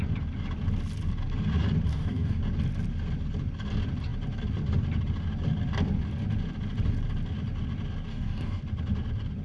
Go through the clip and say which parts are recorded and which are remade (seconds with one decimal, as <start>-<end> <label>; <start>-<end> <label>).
0.0-1.9 recorded; 1.9-2.4 remade; 2.4-8.1 recorded; 8.1-8.6 remade; 8.6-9.4 recorded